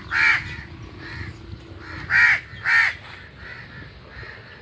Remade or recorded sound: recorded